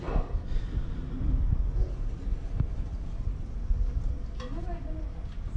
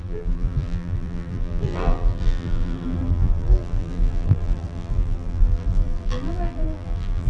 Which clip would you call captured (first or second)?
first